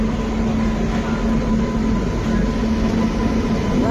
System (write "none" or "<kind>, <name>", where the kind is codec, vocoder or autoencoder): none